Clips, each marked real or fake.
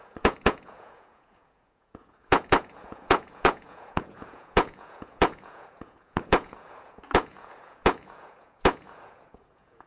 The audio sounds fake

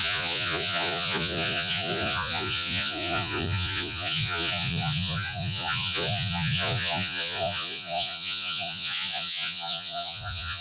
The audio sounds fake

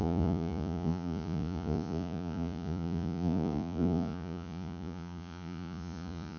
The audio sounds fake